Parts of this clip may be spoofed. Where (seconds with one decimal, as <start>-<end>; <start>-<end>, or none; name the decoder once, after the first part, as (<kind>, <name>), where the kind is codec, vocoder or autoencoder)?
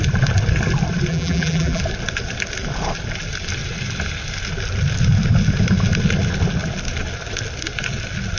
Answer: 1.1-1.8 (vocoder, BigVGAN v2)